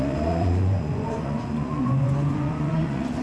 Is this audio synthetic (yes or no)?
yes